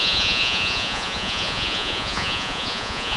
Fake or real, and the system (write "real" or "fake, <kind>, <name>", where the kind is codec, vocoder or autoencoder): fake, vocoder, Vocos